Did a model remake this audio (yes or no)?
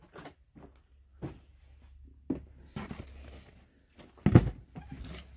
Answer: no